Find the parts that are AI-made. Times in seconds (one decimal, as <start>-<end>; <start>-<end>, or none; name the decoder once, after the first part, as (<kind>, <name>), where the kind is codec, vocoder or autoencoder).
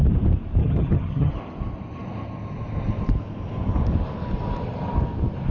0.6-1.3 (vocoder, HiFi-GAN)